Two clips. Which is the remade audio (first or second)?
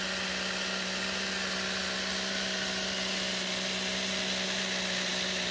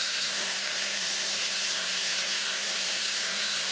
second